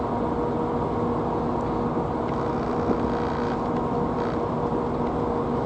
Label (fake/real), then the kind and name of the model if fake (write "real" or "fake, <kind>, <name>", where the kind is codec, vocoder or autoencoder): real